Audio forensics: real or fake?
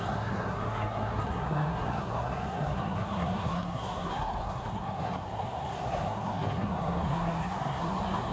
fake